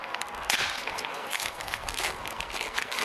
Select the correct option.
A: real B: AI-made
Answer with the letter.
B